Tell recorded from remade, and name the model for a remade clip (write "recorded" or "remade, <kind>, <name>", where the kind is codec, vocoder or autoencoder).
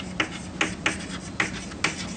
recorded